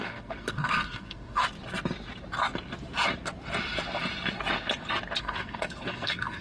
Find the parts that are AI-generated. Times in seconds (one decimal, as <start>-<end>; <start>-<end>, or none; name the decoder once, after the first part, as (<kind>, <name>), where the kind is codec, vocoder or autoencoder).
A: 0.0-1.4 (codec, SNAC); 5.2-6.4